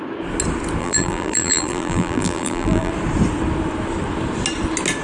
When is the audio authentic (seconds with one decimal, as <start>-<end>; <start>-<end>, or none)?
0.0-0.8; 2.9-5.0